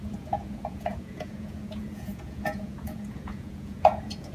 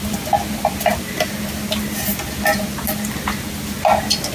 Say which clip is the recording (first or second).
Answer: second